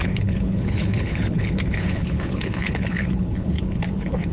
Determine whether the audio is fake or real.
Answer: fake